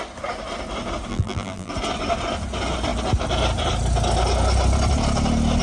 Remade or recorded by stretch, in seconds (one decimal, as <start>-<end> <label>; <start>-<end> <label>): 0.0-1.1 recorded; 1.1-1.7 remade; 1.7-5.6 recorded